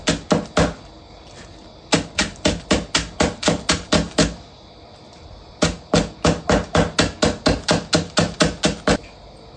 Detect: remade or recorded recorded